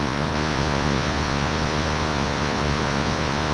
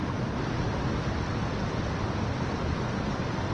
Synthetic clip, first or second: first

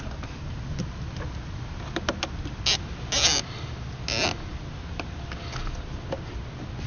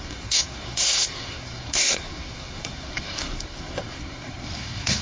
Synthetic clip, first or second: second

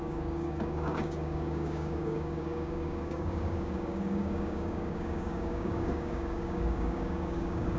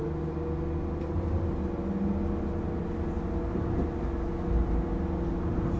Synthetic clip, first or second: first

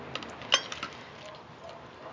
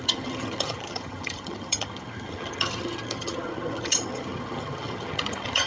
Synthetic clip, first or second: second